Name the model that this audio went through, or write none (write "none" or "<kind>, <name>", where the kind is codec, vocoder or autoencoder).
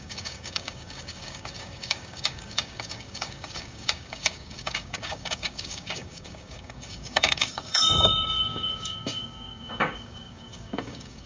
codec, DAC